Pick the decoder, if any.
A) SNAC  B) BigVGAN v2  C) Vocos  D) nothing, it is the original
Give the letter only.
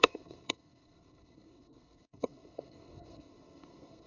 A